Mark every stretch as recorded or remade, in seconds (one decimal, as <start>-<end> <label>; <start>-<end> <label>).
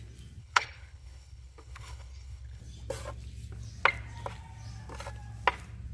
0.0-0.4 recorded; 0.4-2.6 remade; 2.6-5.9 recorded